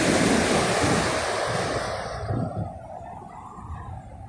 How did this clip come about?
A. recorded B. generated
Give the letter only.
A